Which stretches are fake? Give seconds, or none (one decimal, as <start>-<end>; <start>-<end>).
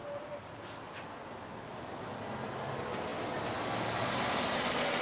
none